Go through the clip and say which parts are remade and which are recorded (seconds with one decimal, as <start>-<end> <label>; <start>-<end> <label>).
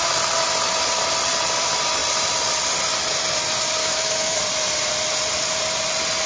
0.0-3.8 recorded; 3.8-4.4 remade; 4.4-6.3 recorded